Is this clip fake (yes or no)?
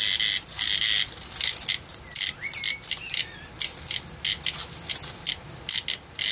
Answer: no